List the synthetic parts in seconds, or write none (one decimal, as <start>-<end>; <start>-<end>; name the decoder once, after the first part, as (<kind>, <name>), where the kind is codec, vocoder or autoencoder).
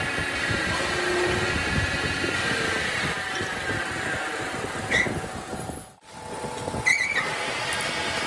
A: none